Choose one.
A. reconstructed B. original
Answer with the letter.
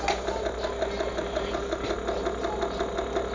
B